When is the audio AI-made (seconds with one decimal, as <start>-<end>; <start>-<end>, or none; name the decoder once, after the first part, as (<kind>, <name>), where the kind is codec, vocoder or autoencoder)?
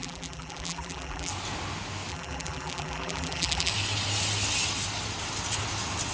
0.0-1.3 (vocoder, BigVGAN v2); 2.1-3.7